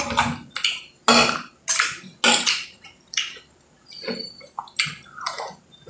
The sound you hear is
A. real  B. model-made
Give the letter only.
A